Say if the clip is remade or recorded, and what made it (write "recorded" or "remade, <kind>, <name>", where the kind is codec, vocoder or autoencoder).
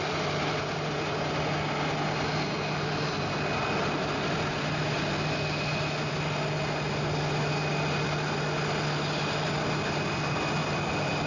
recorded